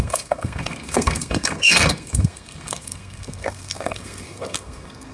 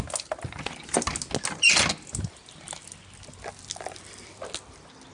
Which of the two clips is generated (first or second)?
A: first